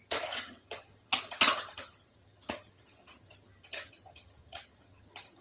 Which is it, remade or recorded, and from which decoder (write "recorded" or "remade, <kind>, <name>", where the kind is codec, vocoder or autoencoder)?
remade, vocoder, HiFi-GAN